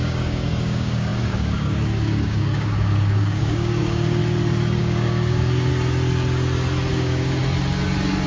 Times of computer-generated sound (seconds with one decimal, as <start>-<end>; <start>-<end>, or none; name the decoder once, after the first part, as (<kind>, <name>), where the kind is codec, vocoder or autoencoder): 0.0-4.2 (codec, DAC); 4.8-5.7; 6.9-7.4